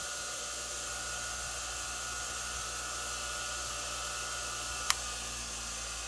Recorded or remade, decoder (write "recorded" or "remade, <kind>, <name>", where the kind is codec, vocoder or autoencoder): recorded